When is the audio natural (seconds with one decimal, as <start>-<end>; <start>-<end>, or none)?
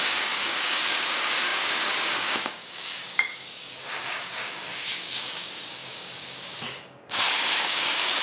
none